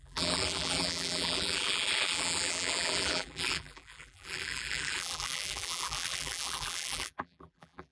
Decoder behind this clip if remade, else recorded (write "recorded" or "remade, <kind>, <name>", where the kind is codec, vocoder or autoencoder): remade, vocoder, BigVGAN v2